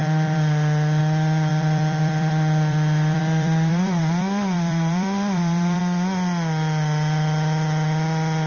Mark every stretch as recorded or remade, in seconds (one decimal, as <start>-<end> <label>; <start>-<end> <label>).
0.0-1.0 remade; 1.0-1.5 recorded; 1.5-5.8 remade; 5.8-8.5 recorded